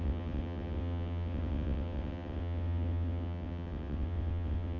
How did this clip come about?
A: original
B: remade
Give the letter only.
B